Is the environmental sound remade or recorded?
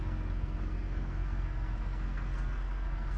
remade